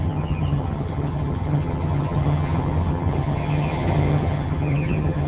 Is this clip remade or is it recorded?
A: remade